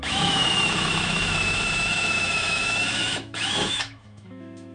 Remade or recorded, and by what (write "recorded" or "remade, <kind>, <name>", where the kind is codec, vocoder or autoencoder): remade, autoencoder, DAC-VAE